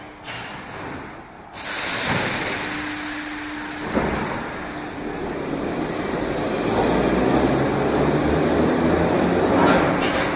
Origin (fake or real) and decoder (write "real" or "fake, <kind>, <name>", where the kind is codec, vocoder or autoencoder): real